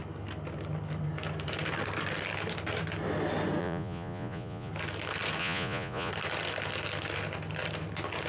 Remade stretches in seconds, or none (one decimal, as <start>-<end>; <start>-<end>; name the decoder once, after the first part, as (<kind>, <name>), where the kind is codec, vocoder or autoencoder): 3.6-4.7 (vocoder, Vocos); 5.4-6.1